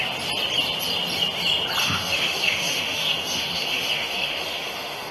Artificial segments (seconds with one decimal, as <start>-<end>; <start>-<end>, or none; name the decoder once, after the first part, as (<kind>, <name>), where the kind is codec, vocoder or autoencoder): 1.8-5.1 (autoencoder, DAC-VAE)